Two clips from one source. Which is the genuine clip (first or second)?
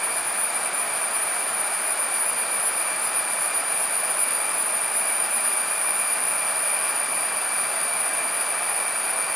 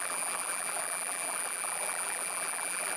first